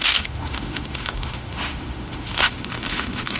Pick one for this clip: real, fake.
fake